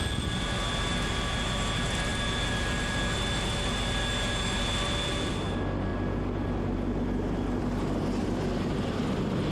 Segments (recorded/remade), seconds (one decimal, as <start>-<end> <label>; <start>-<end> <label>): 0.0-9.5 recorded